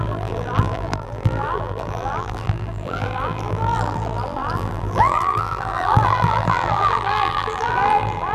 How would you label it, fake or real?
fake